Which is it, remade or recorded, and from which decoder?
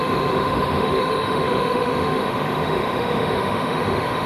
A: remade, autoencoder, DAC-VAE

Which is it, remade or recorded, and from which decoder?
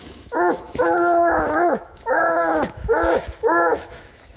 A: remade, autoencoder, DAC-VAE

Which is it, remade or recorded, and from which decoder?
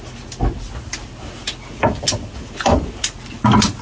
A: recorded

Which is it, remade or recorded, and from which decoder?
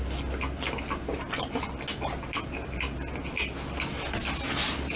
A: recorded